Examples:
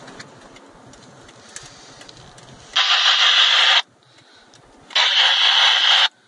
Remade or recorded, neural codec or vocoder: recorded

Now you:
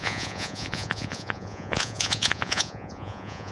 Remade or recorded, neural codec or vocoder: remade, vocoder, Vocos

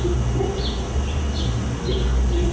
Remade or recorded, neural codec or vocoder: recorded